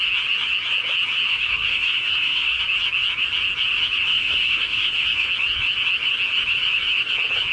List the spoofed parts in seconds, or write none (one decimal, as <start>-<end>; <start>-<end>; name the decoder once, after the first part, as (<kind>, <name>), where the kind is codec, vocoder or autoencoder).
1.3-2.6 (codec, SNAC); 4.1-5.3